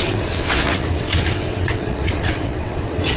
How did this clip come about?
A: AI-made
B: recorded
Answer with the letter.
A